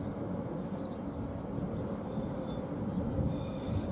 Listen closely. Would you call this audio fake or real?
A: real